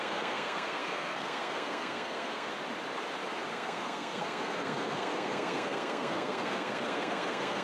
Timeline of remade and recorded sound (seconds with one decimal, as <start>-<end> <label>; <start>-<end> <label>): 0.0-2.5 remade; 2.5-3.5 recorded; 3.5-7.6 remade